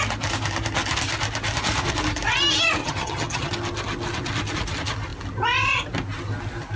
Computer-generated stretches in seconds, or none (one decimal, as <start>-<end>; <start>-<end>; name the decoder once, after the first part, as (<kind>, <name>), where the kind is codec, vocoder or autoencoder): 2.8-3.5 (vocoder, HiFi-GAN)